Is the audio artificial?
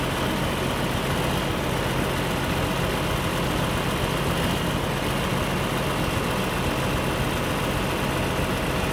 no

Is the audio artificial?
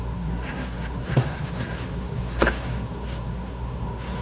yes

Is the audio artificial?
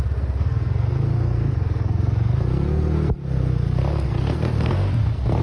yes